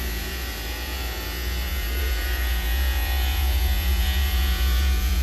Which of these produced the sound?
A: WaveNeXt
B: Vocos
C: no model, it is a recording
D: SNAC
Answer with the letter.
B